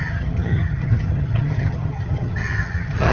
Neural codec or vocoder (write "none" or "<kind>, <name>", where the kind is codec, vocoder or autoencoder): vocoder, HiFi-GAN